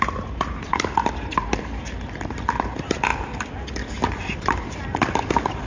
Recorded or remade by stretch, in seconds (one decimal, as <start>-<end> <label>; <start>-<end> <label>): 0.0-5.7 recorded